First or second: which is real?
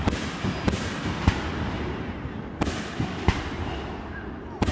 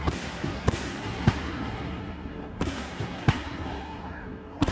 first